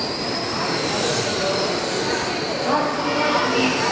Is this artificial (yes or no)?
no